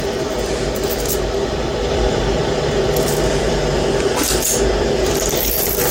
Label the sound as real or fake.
fake